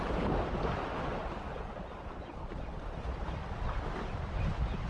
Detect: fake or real real